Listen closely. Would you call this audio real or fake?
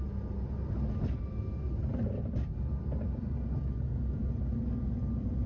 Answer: real